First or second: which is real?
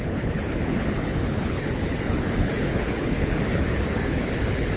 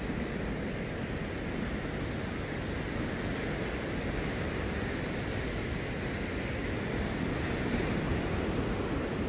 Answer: second